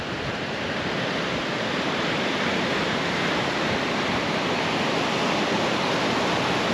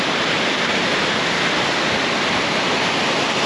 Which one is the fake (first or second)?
first